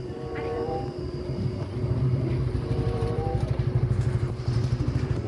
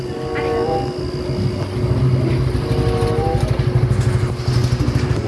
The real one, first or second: second